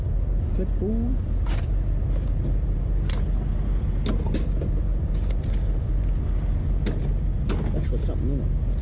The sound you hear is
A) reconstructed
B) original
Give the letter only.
B